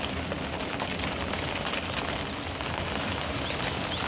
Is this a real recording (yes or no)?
yes